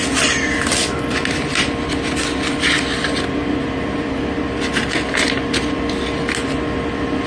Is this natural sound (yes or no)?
yes